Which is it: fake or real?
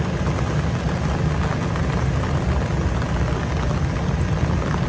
real